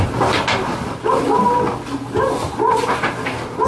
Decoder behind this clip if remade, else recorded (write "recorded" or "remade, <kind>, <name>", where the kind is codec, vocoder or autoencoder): recorded